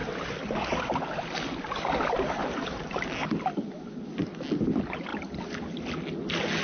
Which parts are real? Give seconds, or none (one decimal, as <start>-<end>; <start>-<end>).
0.0-6.6